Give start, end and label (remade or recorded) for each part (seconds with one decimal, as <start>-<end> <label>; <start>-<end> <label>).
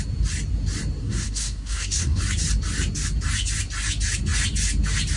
0.0-1.0 recorded; 1.0-2.2 remade; 2.2-5.2 recorded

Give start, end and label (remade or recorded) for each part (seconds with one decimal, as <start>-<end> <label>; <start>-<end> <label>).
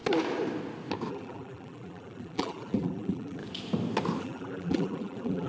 0.0-1.1 recorded; 1.1-3.4 remade; 3.4-4.2 recorded; 4.2-5.5 remade